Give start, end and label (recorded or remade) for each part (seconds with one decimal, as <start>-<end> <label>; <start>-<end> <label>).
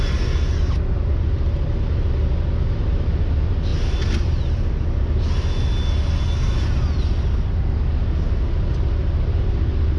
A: 0.0-10.0 recorded